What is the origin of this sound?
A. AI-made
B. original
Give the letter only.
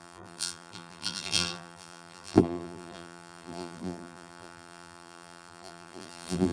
A